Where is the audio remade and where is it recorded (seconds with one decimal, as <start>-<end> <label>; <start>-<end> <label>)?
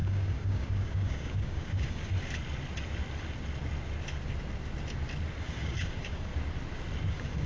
0.0-2.1 remade; 2.1-5.4 recorded; 5.4-6.3 remade; 6.3-7.1 recorded; 7.1-7.5 remade